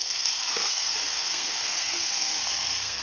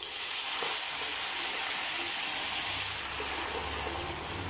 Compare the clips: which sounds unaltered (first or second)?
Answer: second